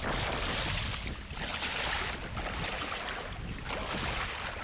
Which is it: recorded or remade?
recorded